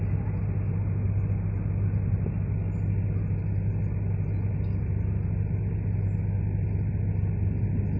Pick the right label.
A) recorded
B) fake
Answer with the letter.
A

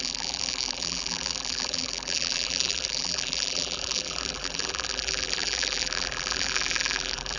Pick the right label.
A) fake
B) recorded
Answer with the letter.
A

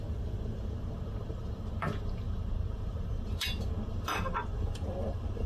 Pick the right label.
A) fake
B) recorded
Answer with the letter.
A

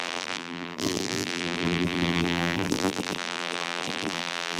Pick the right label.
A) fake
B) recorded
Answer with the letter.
A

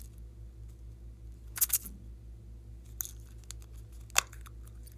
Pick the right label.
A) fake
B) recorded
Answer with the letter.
B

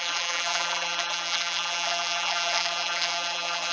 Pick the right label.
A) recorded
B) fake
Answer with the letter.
B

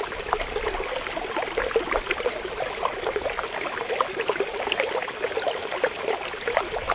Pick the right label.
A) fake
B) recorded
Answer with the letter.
A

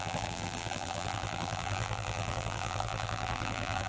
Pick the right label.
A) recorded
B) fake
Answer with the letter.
B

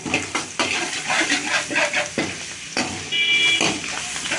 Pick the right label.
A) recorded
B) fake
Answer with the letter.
A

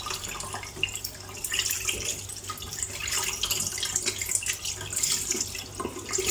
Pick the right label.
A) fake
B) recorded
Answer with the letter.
B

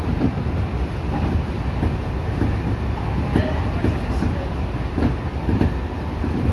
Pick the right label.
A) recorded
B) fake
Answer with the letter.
A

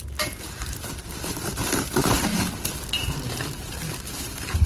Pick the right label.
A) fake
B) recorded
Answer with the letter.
A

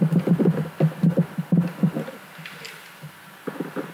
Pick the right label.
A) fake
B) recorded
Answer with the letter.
B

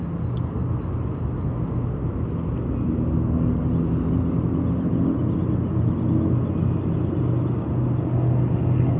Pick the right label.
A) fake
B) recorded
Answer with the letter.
B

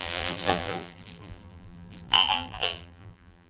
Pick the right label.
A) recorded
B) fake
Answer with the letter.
B